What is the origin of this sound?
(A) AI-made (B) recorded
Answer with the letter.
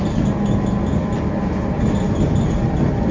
B